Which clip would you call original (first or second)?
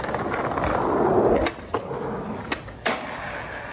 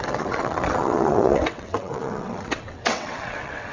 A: first